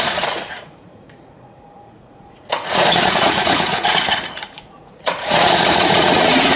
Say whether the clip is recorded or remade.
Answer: remade